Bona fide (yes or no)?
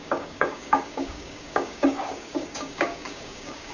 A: no